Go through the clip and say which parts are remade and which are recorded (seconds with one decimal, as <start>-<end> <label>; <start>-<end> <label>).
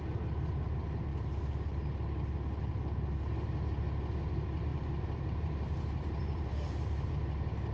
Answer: 0.0-4.7 recorded; 4.7-7.1 remade; 7.1-7.7 recorded